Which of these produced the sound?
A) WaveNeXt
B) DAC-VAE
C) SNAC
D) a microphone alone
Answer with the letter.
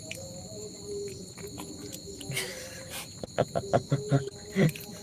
D